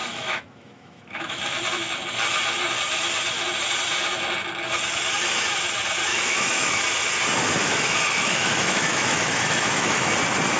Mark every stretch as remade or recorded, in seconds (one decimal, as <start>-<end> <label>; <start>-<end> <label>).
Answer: 0.0-1.4 remade; 1.4-6.1 recorded; 6.1-6.8 remade; 6.8-7.6 recorded; 7.6-10.1 remade; 10.1-10.6 recorded